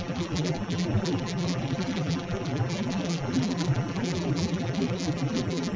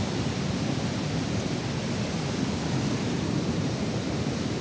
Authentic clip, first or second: second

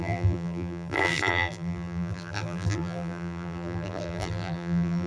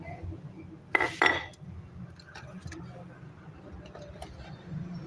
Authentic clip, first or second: second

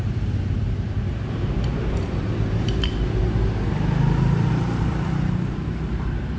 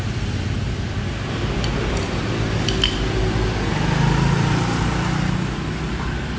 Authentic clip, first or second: second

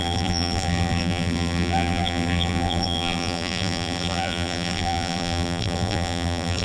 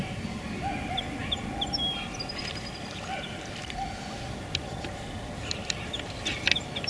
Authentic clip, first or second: second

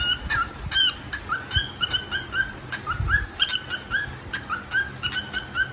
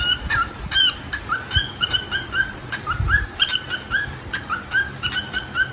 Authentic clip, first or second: first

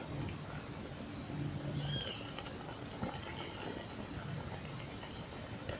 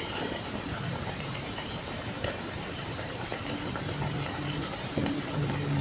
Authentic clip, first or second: first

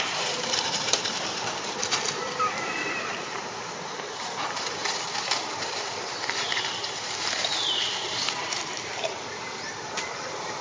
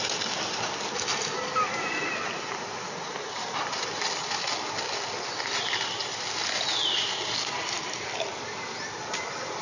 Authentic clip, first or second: second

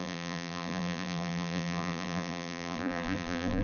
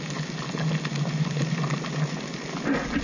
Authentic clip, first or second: second